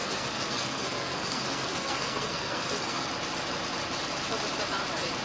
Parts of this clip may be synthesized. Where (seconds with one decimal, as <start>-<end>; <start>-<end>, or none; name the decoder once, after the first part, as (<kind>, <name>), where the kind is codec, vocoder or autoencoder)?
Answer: 0.0-3.1 (codec, SNAC)